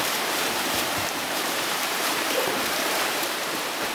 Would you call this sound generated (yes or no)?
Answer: yes